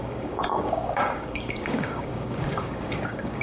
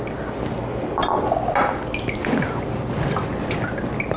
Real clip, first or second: second